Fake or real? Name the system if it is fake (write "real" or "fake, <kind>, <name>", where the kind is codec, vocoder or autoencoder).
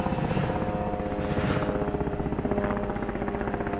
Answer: real